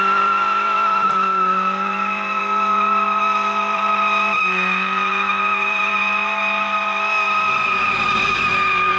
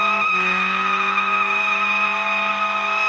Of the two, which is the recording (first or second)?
second